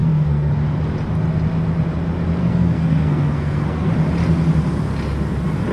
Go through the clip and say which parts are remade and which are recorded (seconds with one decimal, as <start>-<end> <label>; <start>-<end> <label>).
0.0-0.5 remade; 0.5-2.4 recorded; 2.4-3.9 remade; 3.9-5.7 recorded